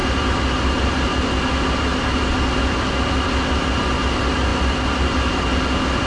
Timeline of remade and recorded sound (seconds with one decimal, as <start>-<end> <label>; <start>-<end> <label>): 0.0-6.1 recorded